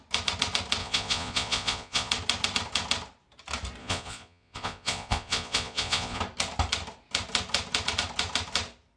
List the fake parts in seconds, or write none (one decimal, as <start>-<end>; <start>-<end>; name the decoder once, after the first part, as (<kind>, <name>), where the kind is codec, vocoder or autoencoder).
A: 0.8-2.1 (vocoder, Vocos); 3.8-6.2